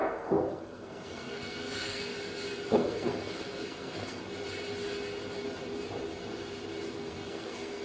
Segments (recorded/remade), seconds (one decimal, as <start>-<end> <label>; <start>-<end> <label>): 0.0-2.1 remade; 2.1-2.7 recorded; 2.7-4.2 remade; 4.2-6.9 recorded; 6.9-7.8 remade